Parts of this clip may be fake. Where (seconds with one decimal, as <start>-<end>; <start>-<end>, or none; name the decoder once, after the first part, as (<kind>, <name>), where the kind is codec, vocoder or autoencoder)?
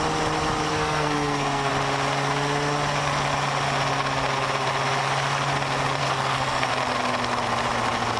0.7-1.7 (codec, SNAC); 6.0-6.7